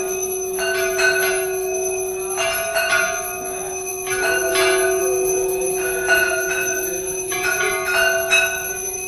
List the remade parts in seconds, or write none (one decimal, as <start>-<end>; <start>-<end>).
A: 5.0-7.7